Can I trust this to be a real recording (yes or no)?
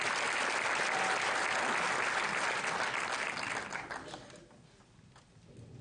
yes